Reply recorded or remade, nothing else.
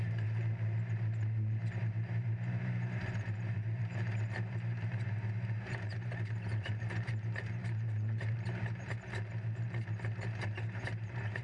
remade